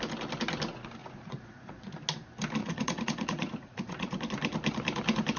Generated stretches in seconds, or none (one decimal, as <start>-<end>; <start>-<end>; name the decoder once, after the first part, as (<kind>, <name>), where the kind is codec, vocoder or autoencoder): 1.0-1.9 (vocoder, Vocos); 2.6-4.2